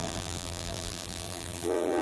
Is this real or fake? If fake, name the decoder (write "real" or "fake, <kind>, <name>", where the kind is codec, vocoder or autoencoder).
fake, vocoder, BigVGAN v2